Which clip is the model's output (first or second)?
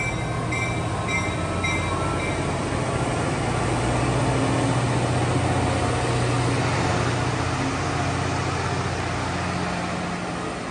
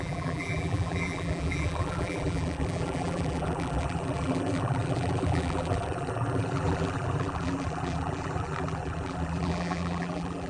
second